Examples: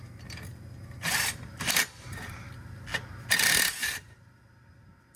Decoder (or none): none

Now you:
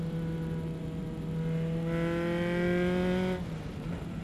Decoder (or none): none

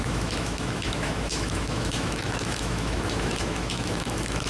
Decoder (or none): autoencoder, DAC-VAE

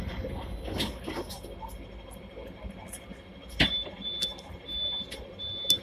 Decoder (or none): none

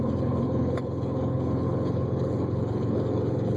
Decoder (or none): codec, HILCodec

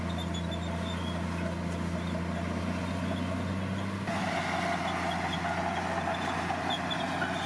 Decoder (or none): none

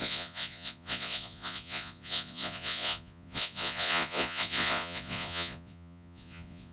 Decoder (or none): vocoder, Vocos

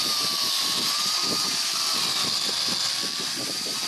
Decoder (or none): none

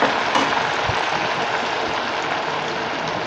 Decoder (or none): none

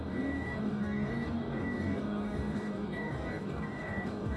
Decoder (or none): codec, DAC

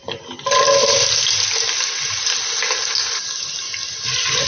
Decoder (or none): none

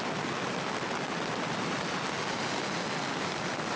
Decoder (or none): none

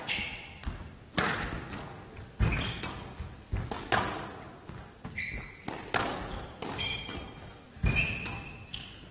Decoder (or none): none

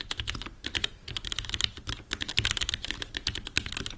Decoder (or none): none